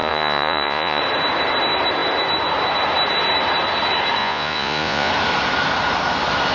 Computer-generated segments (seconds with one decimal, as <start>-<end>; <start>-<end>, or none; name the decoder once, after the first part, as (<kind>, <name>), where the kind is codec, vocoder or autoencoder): 0.0-1.0 (vocoder, Vocos); 4.2-5.1